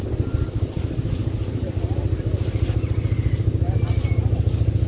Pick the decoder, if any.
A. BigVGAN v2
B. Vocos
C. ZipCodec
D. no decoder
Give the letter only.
D